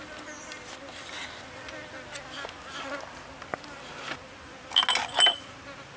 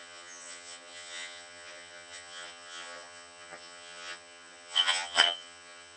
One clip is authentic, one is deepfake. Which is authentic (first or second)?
first